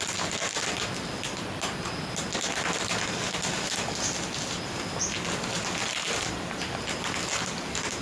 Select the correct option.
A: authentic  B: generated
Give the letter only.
A